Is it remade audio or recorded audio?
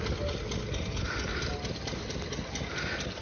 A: recorded